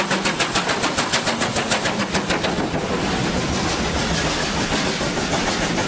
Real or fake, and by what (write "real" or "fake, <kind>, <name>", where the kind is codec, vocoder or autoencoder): real